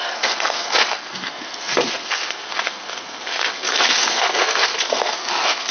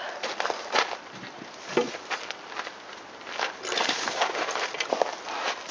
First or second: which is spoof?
first